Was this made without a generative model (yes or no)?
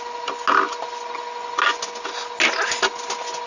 yes